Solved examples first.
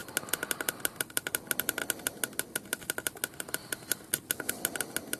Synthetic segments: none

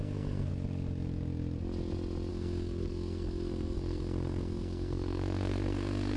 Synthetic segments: 0.0-0.5 (codec, SNAC); 2.3-6.2